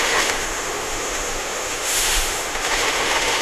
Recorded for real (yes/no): no